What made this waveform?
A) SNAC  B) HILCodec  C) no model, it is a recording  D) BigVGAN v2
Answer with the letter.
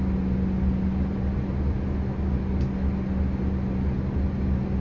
C